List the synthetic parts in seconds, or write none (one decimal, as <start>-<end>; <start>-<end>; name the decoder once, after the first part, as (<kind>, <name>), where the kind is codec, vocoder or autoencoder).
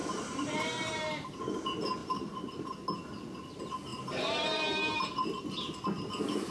0.0-1.4 (vocoder, BigVGAN v2); 2.0-2.5; 3.9-5.4